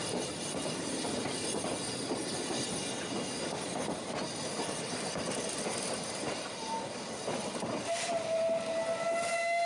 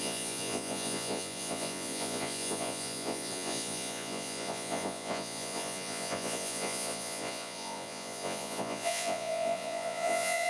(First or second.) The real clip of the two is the first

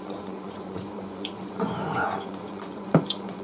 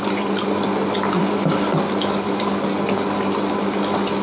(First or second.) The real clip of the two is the second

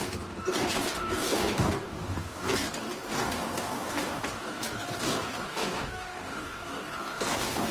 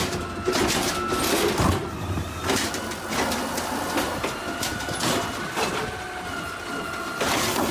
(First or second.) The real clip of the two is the second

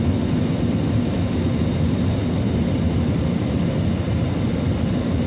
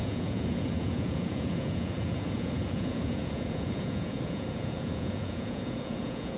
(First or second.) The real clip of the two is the first